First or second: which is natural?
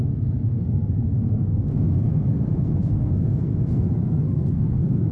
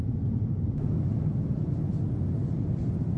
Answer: second